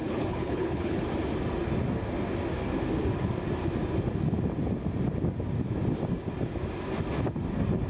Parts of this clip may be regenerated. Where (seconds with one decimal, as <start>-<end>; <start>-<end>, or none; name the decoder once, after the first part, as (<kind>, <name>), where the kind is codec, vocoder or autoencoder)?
0.0-1.0 (codec, HILCodec)